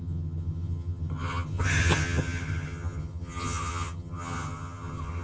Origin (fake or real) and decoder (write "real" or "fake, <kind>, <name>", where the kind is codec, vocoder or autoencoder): fake, vocoder, HiFi-GAN